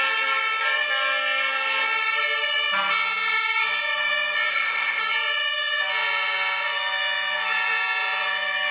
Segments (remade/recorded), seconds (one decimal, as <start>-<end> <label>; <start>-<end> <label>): 0.0-4.5 recorded; 4.5-5.0 remade; 5.0-8.7 recorded